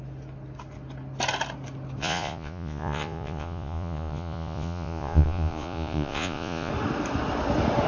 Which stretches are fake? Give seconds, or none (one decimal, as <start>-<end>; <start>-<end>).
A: 2.0-6.7